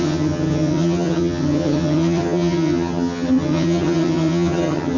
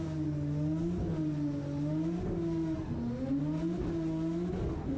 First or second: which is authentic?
second